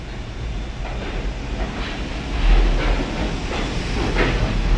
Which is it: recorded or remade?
recorded